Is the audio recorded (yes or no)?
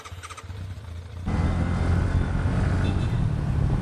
yes